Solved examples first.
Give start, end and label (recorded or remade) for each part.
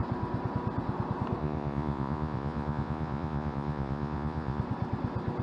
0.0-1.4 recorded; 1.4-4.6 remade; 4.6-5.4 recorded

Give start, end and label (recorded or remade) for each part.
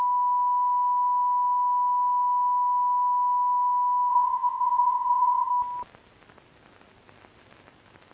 0.0-4.1 recorded; 4.1-5.5 remade; 5.5-8.1 recorded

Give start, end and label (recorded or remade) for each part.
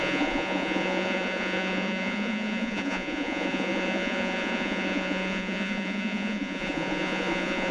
0.0-7.7 remade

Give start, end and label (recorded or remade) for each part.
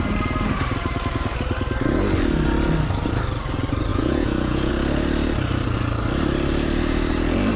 0.0-3.9 recorded; 3.9-4.7 remade; 4.7-7.6 recorded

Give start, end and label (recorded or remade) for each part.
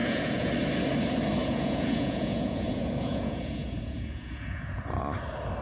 0.0-0.5 remade; 0.5-1.4 recorded; 1.4-4.8 remade; 4.8-5.6 recorded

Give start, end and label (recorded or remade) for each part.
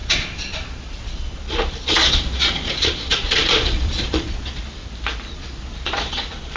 0.0-4.8 remade; 4.8-5.3 recorded; 5.3-6.6 remade